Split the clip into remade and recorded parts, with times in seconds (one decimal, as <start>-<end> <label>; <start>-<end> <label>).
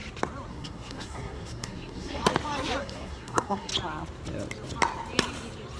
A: 0.0-0.5 recorded; 0.5-2.2 remade; 2.2-2.8 recorded; 2.8-3.7 remade; 3.7-5.8 recorded